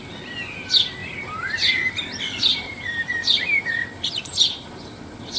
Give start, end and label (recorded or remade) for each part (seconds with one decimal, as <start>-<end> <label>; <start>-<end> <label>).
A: 0.0-1.0 recorded; 1.0-1.7 remade; 1.7-2.5 recorded; 2.5-4.7 remade; 4.7-5.4 recorded